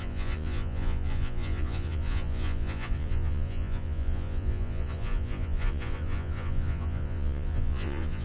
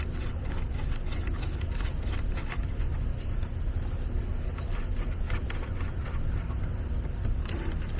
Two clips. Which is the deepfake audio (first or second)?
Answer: first